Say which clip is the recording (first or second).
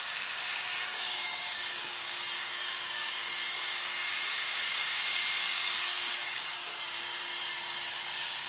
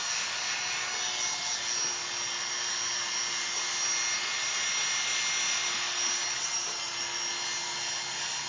second